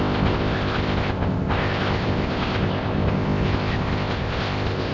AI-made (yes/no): yes